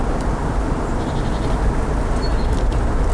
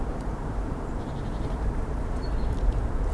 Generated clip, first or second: second